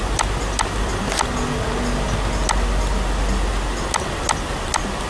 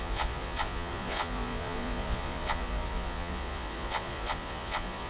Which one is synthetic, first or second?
second